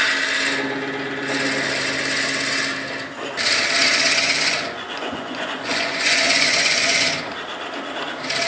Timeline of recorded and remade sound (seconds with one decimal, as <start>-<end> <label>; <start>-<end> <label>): 0.0-3.9 recorded; 3.9-7.3 remade; 7.3-8.5 recorded